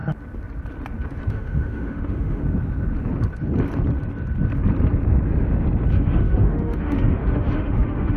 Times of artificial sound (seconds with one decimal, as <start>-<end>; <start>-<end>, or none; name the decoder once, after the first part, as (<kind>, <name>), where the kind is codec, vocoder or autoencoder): 1.3-2.4 (autoencoder, DAC-VAE); 5.9-8.2